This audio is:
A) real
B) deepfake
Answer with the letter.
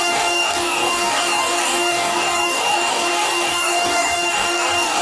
B